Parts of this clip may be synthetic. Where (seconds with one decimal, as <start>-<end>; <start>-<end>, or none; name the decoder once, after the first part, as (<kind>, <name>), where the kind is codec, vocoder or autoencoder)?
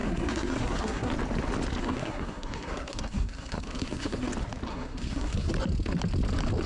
0.0-1.1 (codec, SNAC); 1.8-4.3; 4.7-5.5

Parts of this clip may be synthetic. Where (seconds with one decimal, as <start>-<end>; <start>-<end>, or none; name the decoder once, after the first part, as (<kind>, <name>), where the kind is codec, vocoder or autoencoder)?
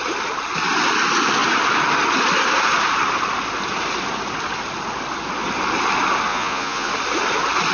6.3-6.9 (vocoder, Vocos)